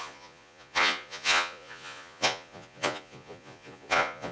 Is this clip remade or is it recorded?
remade